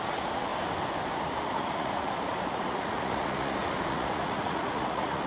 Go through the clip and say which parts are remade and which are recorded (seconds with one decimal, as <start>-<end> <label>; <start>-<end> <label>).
0.0-0.5 remade; 0.5-1.1 recorded; 1.1-5.3 remade